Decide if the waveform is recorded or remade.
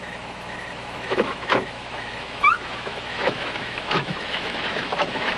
remade